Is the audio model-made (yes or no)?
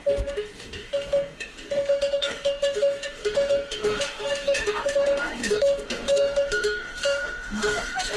yes